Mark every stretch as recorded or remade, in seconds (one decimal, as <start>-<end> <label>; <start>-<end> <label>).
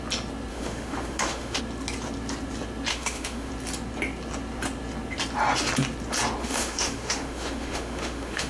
0.0-0.5 recorded; 0.5-1.6 remade; 1.6-2.9 recorded; 2.9-3.5 remade; 3.5-6.4 recorded; 6.4-8.5 remade